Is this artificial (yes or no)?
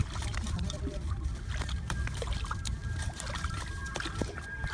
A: yes